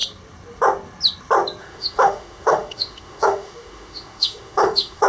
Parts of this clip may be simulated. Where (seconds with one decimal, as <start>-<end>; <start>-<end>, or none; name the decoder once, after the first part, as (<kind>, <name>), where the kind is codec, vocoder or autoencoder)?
1.6-5.1 (autoencoder, DAC-VAE)